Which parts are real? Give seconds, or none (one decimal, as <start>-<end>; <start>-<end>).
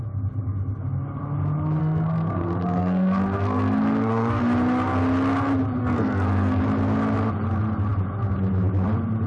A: 0.0-1.8; 4.4-5.8; 6.6-9.3